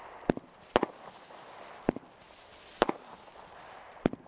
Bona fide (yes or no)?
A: yes